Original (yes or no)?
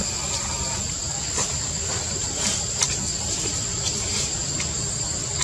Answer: no